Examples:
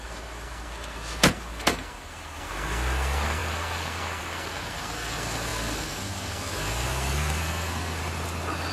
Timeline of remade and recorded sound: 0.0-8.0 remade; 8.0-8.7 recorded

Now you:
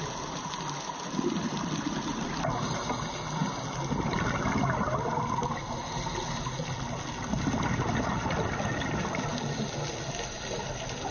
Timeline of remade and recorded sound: 0.0-11.1 recorded